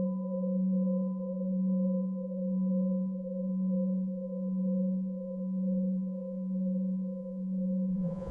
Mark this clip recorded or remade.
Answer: remade